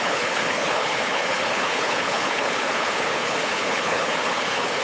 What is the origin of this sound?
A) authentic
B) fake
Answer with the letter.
B